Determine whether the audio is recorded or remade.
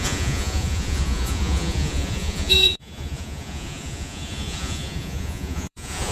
remade